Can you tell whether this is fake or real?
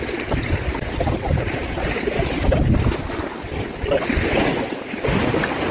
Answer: real